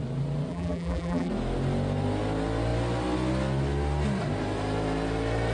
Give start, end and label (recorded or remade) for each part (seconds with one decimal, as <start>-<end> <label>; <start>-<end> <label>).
0.0-0.5 recorded; 0.5-1.3 remade; 1.3-5.5 recorded